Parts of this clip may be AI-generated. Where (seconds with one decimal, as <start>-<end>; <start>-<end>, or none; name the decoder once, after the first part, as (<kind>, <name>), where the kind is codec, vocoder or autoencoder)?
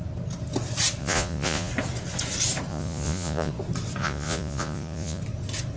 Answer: 1.0-1.7 (vocoder, Vocos); 2.7-3.5; 4.0-5.2